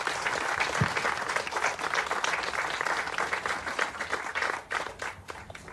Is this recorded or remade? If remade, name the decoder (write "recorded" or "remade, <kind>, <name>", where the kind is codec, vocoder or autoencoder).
recorded